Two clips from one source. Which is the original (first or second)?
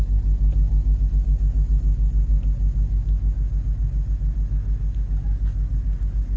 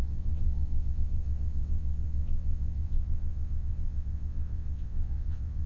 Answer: first